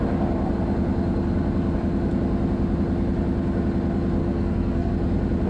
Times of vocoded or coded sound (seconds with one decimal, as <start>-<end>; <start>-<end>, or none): 4.2-4.9